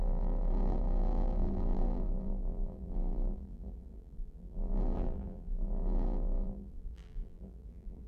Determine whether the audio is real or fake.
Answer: fake